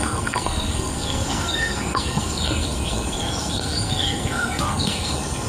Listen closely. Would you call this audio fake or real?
fake